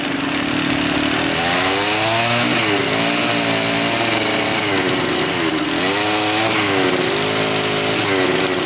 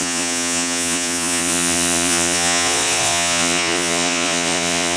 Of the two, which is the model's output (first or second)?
second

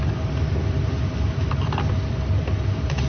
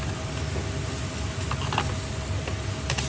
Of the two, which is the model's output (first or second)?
first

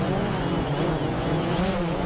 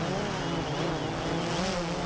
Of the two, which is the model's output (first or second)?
first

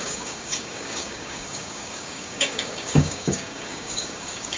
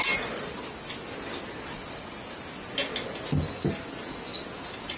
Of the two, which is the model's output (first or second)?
first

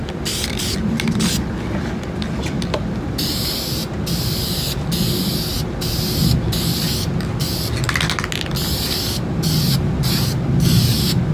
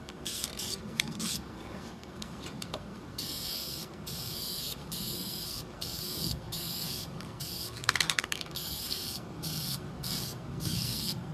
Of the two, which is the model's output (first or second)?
second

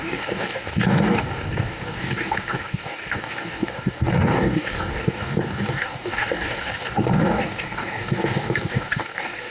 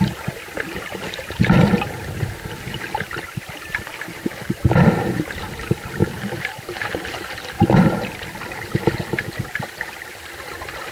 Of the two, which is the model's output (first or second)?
first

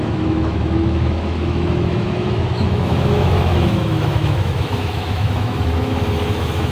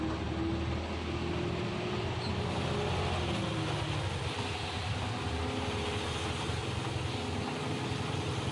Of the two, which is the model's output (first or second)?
first